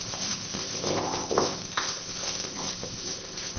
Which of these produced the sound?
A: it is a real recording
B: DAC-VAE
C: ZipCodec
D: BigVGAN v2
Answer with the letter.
C